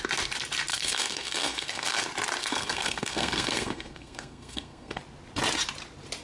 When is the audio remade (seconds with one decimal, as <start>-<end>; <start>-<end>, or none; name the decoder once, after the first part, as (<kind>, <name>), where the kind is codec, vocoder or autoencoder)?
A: 0.7-2.0 (codec, SNAC); 2.4-5.0